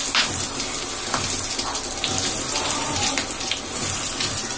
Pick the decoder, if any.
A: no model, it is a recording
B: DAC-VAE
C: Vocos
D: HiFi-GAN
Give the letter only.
A